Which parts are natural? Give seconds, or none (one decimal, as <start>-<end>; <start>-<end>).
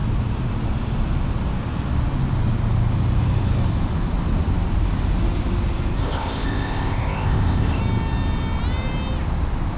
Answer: 0.0-6.0; 7.8-9.8